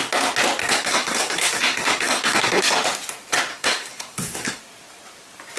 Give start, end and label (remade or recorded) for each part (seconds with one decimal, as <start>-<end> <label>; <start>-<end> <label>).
0.0-0.6 recorded; 0.6-2.6 remade; 2.6-3.5 recorded; 3.5-4.6 remade; 4.6-5.6 recorded